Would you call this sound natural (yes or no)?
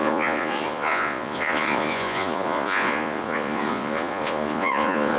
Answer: no